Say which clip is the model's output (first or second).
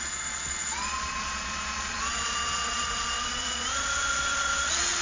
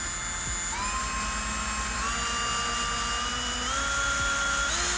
first